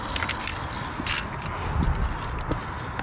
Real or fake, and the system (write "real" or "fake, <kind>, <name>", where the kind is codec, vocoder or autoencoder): real